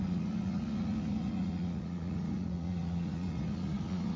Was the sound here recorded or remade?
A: remade